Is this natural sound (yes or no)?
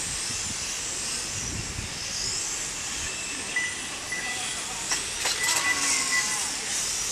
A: yes